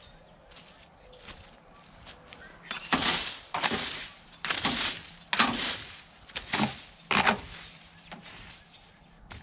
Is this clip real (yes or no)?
yes